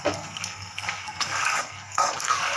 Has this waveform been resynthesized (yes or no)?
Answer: yes